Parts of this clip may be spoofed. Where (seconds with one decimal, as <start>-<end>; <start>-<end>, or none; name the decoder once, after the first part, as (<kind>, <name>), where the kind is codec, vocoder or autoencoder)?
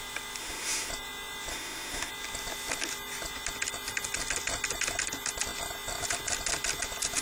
0.4-0.9 (autoencoder, DAC-VAE); 1.5-2.1